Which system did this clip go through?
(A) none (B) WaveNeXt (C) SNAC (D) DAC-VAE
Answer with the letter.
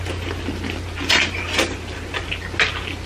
A